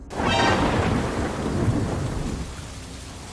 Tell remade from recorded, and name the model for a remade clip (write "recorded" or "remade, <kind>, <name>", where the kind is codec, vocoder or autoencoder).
recorded